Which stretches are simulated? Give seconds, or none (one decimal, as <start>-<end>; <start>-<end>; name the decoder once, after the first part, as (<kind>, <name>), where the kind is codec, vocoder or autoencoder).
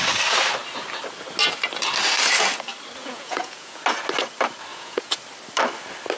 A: 3.0-3.8 (vocoder, Vocos); 4.7-5.2